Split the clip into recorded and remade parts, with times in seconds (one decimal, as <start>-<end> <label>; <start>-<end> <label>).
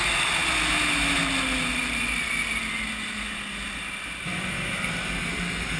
0.0-5.8 recorded